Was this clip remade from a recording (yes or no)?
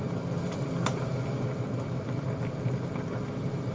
no